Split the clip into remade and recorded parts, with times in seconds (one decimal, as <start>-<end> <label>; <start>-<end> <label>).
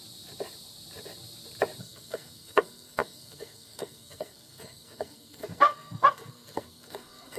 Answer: 0.0-1.8 recorded; 1.8-7.4 remade